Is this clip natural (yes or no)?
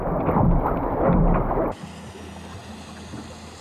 yes